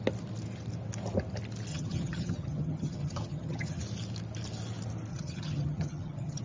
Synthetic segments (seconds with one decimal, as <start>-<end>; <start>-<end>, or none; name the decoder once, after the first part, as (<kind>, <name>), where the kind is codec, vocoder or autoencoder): 1.7-3.8 (vocoder, HiFi-GAN); 5.1-6.4